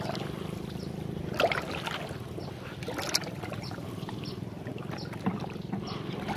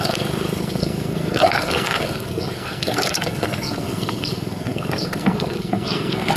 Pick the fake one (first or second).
second